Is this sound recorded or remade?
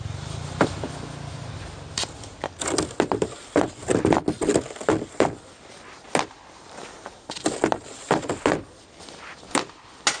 recorded